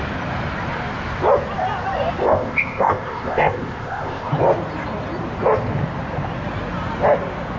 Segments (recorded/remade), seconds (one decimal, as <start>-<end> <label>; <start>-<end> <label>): 0.0-2.2 recorded; 2.2-4.3 remade; 4.3-7.6 recorded